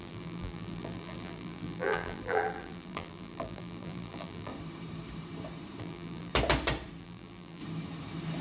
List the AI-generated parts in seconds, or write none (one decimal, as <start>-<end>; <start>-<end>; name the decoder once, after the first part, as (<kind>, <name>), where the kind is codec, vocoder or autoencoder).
0.0-4.5 (vocoder, BigVGAN v2); 5.8-6.3; 7.0-7.6

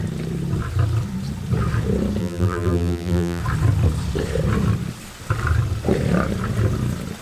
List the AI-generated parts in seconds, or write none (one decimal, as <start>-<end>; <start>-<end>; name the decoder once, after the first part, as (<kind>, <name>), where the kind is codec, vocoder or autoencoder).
2.2-3.4 (vocoder, BigVGAN v2)

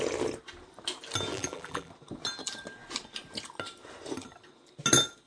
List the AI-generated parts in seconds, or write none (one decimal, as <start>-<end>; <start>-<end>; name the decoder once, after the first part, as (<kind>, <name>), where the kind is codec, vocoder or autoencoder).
1.3-1.9 (vocoder, BigVGAN v2)

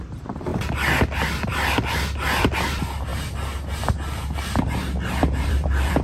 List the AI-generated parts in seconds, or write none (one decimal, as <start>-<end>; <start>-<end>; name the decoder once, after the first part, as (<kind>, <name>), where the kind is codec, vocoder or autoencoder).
0.0-0.5 (vocoder, BigVGAN v2); 2.7-3.1; 5.1-6.0

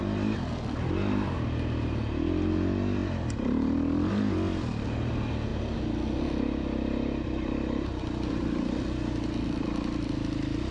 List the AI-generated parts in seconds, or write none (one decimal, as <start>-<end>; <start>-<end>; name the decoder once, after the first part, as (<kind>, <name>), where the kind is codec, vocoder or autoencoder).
5.5-10.1 (vocoder, BigVGAN v2)

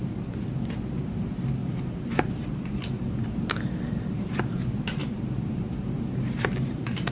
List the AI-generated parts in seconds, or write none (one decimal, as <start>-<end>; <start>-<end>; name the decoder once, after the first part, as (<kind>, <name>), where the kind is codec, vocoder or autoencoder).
1.6-4.3 (vocoder, BigVGAN v2); 5.0-7.1